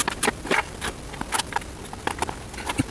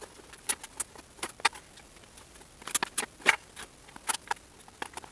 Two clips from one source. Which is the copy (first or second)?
first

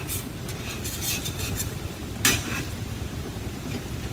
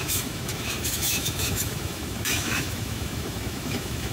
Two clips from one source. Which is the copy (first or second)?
second